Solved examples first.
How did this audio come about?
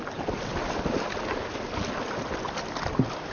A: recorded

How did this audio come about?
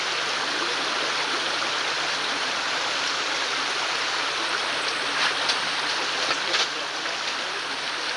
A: recorded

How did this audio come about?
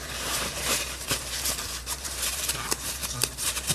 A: remade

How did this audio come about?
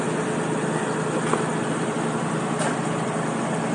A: recorded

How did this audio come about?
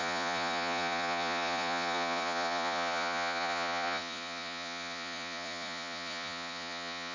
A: remade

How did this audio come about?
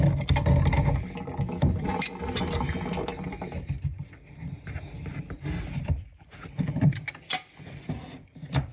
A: recorded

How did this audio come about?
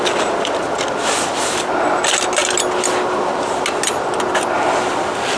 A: recorded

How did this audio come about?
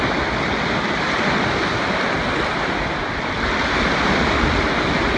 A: recorded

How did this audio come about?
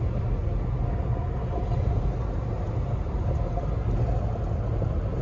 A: recorded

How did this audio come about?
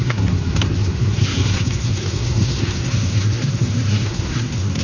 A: remade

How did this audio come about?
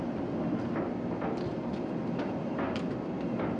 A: recorded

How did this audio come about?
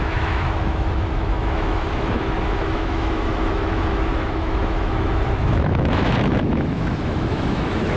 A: remade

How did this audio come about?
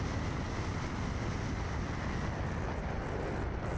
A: recorded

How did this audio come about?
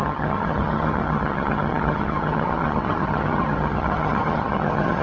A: remade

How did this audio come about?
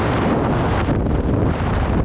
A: recorded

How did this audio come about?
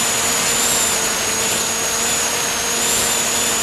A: recorded